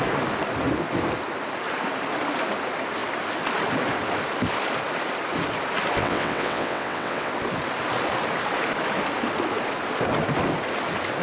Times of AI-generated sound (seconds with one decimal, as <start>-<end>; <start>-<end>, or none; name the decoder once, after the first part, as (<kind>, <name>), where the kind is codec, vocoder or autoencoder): 6.0-7.3 (vocoder, WaveNeXt)